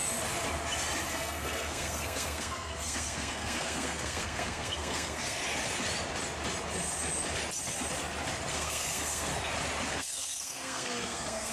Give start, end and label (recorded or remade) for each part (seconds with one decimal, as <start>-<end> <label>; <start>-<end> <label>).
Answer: 0.0-1.1 recorded; 1.1-5.4 remade; 5.4-8.5 recorded; 8.5-9.3 remade; 9.3-9.9 recorded; 9.9-11.5 remade